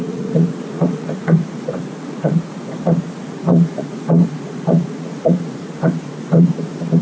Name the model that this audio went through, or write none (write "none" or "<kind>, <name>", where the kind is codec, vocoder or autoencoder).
vocoder, Vocos